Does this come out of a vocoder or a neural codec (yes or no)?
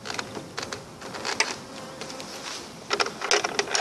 no